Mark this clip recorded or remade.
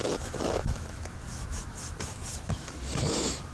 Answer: remade